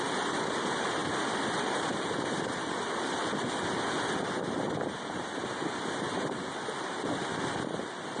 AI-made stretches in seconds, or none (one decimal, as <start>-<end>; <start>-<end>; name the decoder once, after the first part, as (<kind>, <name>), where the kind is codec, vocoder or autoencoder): 1.0-2.1 (vocoder, BigVGAN v2)